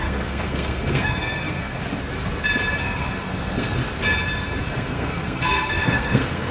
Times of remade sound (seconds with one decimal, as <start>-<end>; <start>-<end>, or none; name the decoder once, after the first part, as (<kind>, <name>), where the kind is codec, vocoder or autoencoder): 0.0-1.8 (codec, SNAC); 2.8-3.8; 4.6-6.5